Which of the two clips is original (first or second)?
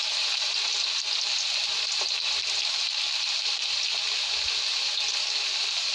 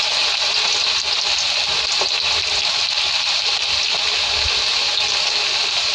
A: second